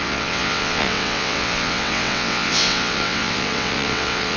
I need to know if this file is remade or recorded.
remade